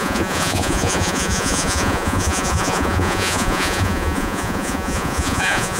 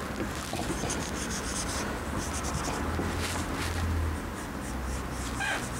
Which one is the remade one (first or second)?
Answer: first